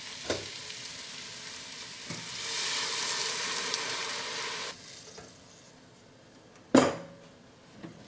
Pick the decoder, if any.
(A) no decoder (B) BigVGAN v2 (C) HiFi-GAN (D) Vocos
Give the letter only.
A